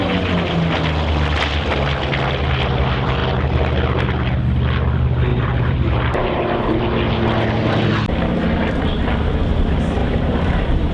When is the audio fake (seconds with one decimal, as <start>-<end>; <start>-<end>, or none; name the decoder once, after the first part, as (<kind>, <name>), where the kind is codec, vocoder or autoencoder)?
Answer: 5.3-6.8 (vocoder, BigVGAN v2); 10.0-10.9

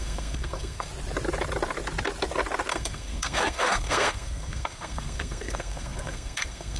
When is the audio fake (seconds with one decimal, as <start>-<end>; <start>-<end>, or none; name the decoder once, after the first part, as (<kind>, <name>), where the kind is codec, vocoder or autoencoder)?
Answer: 0.0-0.9 (codec, SNAC); 2.7-6.8